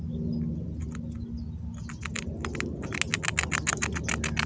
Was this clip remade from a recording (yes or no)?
no